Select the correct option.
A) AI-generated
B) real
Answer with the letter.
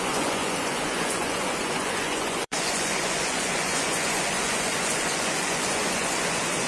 A